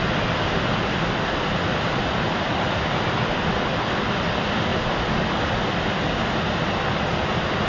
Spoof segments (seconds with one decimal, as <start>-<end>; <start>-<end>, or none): none